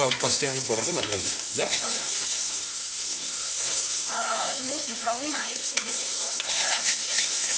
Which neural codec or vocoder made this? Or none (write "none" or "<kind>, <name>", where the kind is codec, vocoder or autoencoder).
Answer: codec, SNAC